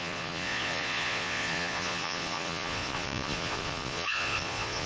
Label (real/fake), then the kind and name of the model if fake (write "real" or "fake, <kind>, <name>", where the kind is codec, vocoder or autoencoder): fake, vocoder, Vocos